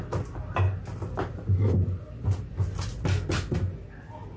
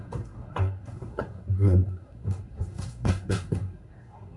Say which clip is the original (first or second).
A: first